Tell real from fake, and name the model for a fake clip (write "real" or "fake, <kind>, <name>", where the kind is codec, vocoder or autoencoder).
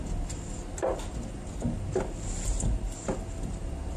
real